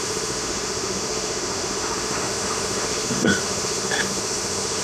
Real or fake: fake